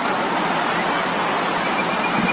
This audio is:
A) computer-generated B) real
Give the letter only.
B